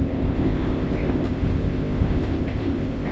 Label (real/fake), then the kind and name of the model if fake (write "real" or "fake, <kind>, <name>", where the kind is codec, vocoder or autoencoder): fake, codec, ZipCodec